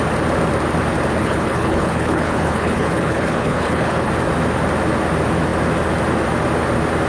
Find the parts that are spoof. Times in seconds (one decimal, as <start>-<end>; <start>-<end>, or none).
1.2-4.1